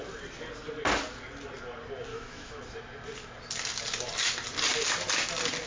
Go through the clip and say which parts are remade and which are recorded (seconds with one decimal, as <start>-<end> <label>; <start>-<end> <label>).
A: 0.0-2.1 recorded; 2.1-2.6 remade; 2.6-5.7 recorded